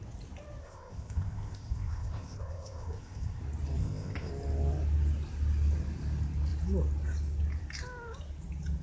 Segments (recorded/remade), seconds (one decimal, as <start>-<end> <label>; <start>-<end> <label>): 0.0-0.6 recorded; 0.6-3.4 remade; 3.4-3.8 recorded; 3.8-4.3 remade; 4.3-8.8 recorded